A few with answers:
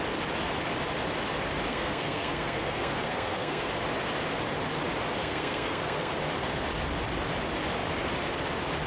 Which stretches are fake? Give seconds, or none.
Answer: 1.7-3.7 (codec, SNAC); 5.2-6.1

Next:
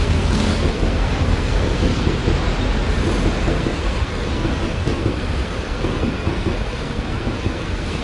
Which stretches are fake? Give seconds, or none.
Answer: 0.0-2.2 (codec, SNAC); 3.4-8.0

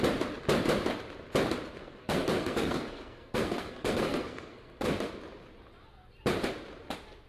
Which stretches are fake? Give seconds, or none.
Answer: 1.8-5.1 (codec, SNAC)

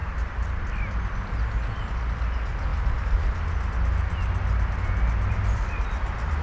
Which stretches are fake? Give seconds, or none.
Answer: none

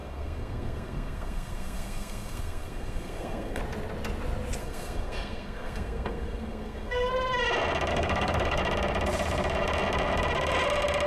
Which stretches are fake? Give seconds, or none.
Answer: 0.0-3.6 (codec, SNAC); 4.6-7.1; 7.9-8.6

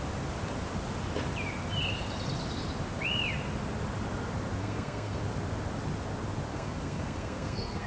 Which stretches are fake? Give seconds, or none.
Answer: 4.6-5.2 (codec, SNAC); 6.5-7.9